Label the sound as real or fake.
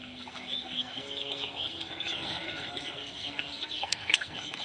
fake